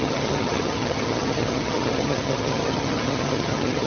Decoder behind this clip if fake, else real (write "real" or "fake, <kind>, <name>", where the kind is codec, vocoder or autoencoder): fake, vocoder, HiFi-GAN